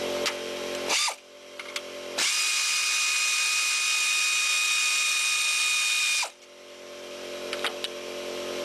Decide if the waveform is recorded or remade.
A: recorded